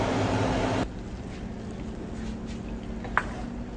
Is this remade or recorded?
recorded